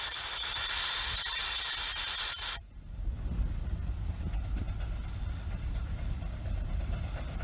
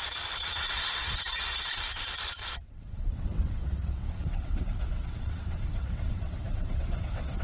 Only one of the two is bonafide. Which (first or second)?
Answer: first